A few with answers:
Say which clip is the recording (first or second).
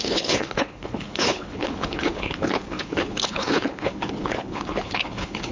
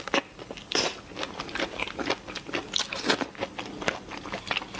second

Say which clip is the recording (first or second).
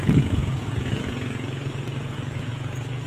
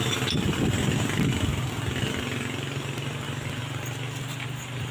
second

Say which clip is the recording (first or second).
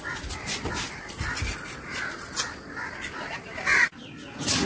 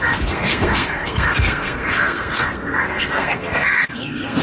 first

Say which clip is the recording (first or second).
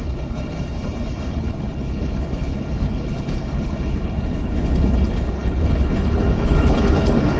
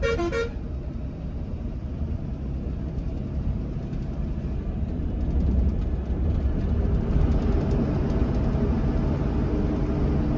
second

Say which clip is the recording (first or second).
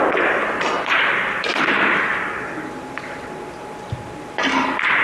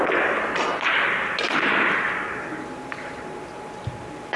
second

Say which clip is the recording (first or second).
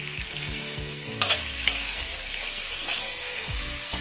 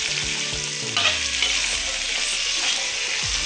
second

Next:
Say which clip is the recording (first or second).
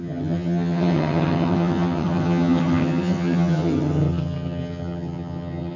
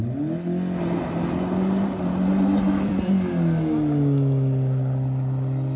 second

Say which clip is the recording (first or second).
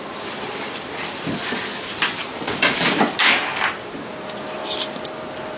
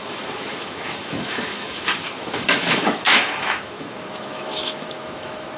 first